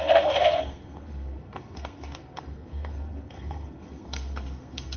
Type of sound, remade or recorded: remade